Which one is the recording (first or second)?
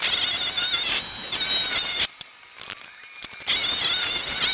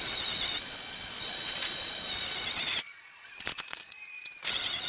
first